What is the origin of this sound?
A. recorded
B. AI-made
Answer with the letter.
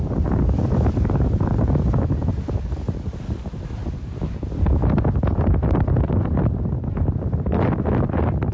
A